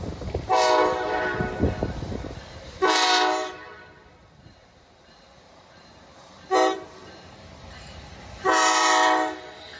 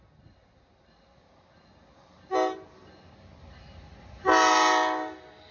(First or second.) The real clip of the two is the second